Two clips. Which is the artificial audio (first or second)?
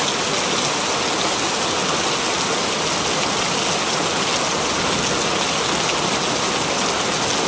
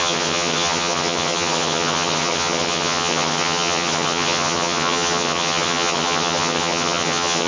second